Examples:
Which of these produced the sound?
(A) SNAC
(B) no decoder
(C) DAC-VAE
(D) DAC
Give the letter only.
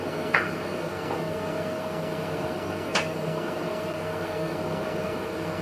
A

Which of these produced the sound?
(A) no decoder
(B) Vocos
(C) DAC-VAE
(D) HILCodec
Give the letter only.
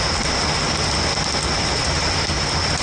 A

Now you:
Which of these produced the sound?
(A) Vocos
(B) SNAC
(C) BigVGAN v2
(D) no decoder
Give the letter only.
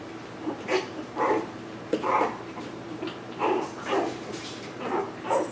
C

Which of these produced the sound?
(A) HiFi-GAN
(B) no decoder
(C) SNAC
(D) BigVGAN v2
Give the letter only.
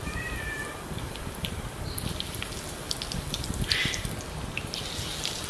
D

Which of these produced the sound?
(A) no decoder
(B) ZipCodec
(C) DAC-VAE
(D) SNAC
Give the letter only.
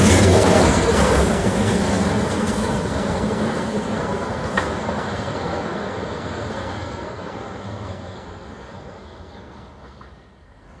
D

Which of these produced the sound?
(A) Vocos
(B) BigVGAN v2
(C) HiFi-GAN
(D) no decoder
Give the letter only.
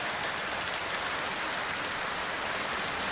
D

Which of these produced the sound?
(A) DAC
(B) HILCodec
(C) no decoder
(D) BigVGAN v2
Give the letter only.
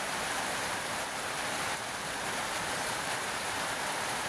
D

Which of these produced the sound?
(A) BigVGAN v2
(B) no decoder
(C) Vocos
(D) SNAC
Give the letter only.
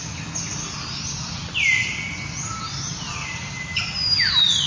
B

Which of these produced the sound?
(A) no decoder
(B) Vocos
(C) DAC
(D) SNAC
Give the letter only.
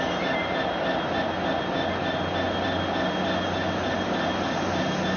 A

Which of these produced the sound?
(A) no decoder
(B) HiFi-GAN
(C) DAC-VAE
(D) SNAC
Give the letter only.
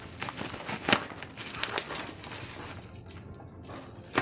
A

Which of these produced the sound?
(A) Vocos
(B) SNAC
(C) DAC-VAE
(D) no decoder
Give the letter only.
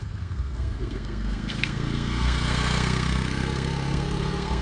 B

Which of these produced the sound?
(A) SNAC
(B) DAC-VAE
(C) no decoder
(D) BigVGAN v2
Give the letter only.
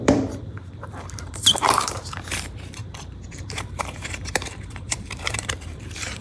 D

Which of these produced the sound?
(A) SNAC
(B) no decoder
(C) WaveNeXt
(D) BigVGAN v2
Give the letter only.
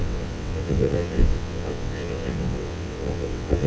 C